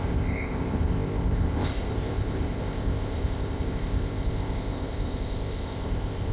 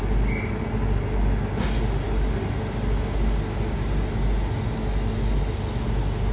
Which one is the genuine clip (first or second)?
second